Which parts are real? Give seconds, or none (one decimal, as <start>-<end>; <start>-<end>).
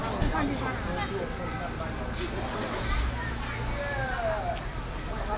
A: 0.0-5.4